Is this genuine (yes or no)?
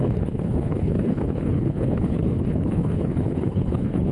no